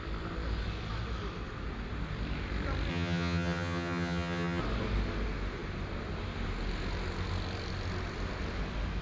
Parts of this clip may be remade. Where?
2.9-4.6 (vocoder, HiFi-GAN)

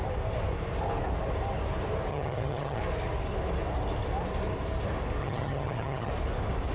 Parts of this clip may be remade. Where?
2.1-2.8 (vocoder, HiFi-GAN); 5.2-6.1

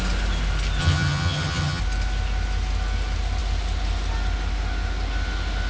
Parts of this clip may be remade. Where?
0.8-1.8 (vocoder, HiFi-GAN)

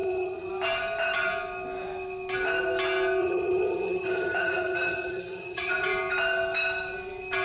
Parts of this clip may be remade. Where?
0.0-0.5 (vocoder, HiFi-GAN); 3.2-5.7

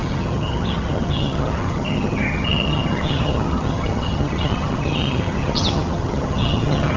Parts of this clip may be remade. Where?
0.0-7.0 (vocoder, HiFi-GAN)

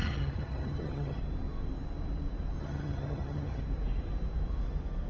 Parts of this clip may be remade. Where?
0.0-1.2 (vocoder, HiFi-GAN); 2.6-3.6

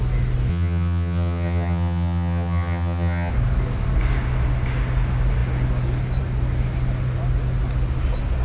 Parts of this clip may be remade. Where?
0.5-3.3 (vocoder, HiFi-GAN)